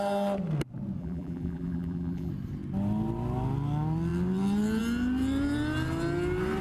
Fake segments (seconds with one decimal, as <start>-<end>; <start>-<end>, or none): 1.0-2.3